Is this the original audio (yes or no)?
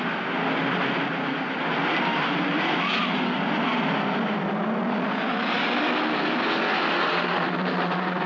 yes